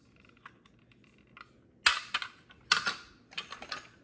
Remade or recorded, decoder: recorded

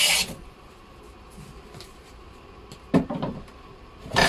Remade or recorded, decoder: recorded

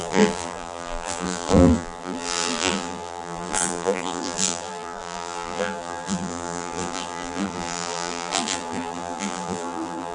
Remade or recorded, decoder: remade, vocoder, BigVGAN v2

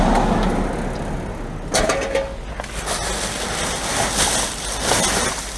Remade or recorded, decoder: recorded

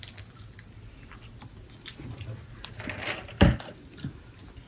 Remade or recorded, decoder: recorded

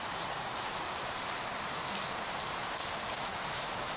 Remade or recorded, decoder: remade, vocoder, BigVGAN v2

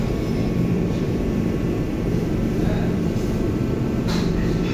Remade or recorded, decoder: remade, vocoder, BigVGAN v2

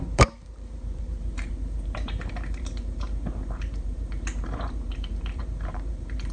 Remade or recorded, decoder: remade, vocoder, BigVGAN v2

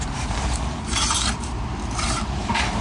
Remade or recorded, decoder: remade, vocoder, BigVGAN v2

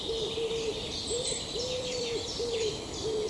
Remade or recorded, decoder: remade, vocoder, BigVGAN v2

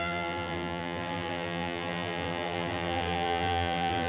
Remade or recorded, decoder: remade, vocoder, BigVGAN v2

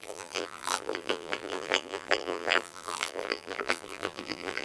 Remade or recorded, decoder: remade, vocoder, BigVGAN v2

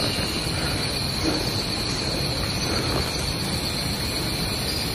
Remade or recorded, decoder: recorded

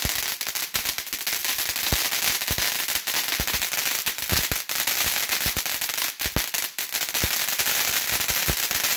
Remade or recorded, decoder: recorded